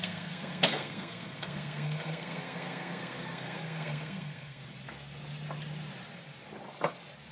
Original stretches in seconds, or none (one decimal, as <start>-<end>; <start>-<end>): 4.6-7.3

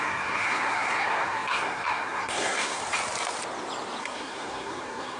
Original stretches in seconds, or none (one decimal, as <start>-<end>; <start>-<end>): 2.8-4.0

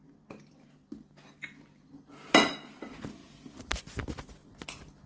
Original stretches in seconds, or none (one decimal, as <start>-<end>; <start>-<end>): 0.0-5.1